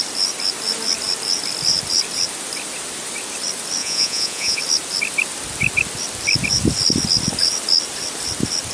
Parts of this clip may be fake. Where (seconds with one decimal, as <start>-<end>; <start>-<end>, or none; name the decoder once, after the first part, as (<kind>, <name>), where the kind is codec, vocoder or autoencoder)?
3.8-4.6 (vocoder, Vocos)